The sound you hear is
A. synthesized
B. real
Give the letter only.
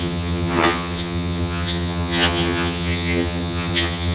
A